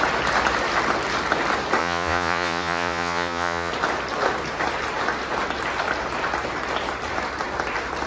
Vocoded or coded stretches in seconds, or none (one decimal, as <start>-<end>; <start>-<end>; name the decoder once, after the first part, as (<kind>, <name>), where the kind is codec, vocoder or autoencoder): 1.8-3.7 (vocoder, Vocos)